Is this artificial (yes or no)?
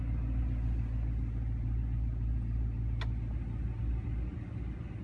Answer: no